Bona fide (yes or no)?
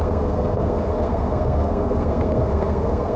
no